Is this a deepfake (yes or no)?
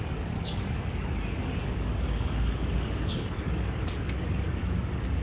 yes